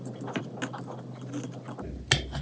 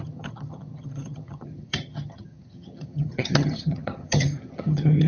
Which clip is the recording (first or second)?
first